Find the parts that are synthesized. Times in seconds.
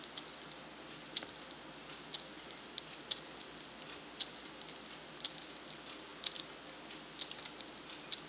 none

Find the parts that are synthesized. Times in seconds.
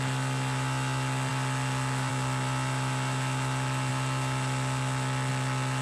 none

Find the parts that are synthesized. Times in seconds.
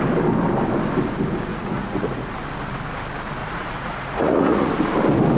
1.5-2.3 (vocoder, Vocos); 3.4-4.7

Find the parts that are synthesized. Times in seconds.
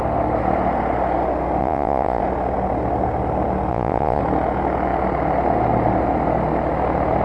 1.6-2.2 (vocoder, Vocos); 3.7-4.2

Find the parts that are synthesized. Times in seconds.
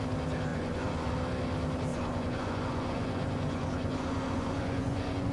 0.5-1.1 (vocoder, Vocos); 1.9-5.3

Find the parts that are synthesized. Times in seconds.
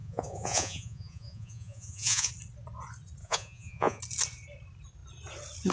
0.0-2.3 (vocoder, Vocos); 3.2-4.0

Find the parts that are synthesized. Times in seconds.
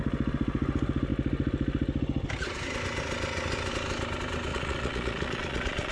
4.5-5.9 (vocoder, Vocos)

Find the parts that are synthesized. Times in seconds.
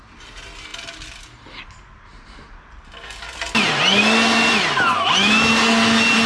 none